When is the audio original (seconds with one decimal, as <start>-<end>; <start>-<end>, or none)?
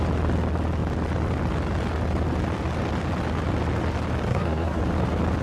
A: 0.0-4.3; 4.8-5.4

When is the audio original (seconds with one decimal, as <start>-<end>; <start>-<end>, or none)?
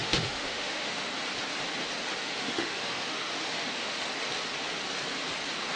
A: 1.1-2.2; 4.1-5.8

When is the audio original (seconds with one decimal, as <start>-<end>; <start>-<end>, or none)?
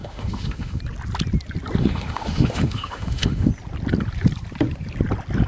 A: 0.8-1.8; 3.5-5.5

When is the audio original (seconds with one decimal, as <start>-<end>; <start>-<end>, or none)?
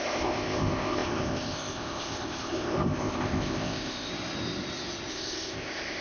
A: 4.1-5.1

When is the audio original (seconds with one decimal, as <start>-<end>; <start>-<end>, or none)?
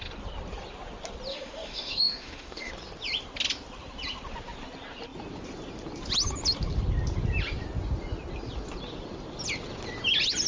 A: 0.0-1.3; 2.7-10.5